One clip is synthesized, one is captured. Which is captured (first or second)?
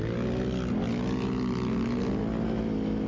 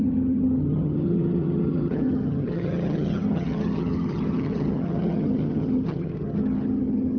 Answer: first